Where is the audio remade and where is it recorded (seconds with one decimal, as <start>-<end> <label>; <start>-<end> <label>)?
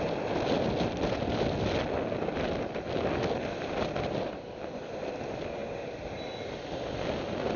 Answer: 0.0-7.6 recorded